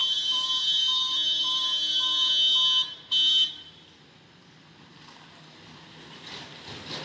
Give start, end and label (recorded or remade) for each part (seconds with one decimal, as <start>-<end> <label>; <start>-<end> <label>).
0.0-2.3 remade; 2.3-7.0 recorded

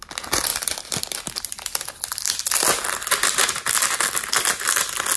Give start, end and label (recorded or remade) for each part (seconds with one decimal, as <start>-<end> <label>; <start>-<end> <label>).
0.0-5.2 recorded

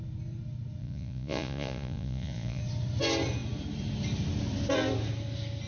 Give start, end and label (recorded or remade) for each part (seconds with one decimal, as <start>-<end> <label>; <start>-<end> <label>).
0.0-0.8 recorded; 0.8-2.6 remade; 2.6-5.7 recorded